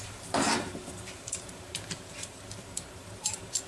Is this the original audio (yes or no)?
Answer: no